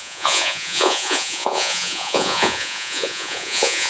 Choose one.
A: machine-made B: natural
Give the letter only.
A